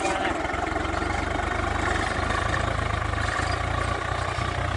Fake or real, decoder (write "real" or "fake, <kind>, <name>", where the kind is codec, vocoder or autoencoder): real